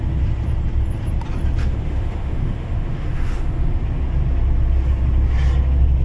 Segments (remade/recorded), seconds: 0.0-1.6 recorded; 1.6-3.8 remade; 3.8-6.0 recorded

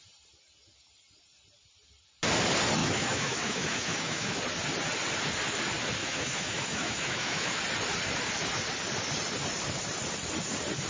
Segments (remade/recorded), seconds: 0.0-2.8 recorded; 2.8-4.4 remade; 4.4-6.0 recorded; 6.0-7.6 remade; 7.6-10.9 recorded

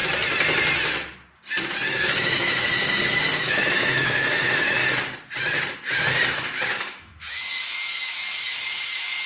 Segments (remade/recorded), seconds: 0.0-1.9 recorded; 1.9-4.8 remade; 4.8-6.3 recorded; 6.3-9.3 remade

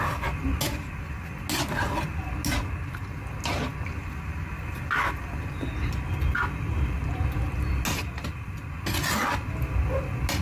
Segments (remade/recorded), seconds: 0.0-10.4 recorded